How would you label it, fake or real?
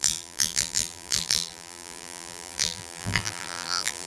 fake